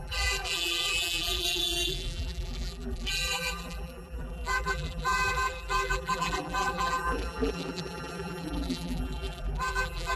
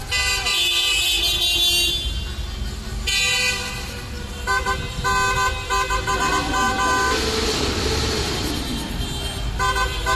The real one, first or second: second